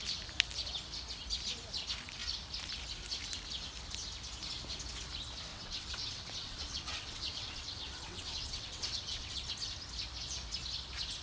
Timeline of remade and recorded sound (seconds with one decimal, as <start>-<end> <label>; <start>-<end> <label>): 0.0-5.5 recorded; 5.5-9.5 remade; 9.5-11.2 recorded